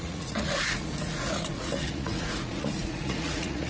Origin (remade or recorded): remade